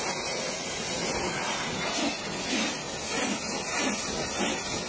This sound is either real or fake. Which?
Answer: real